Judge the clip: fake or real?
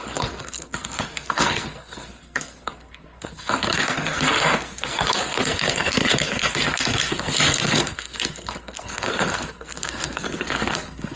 fake